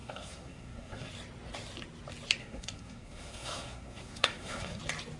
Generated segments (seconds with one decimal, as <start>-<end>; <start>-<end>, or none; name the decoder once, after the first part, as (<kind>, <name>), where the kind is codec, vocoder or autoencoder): 0.0-1.1 (codec, SNAC); 2.4-4.8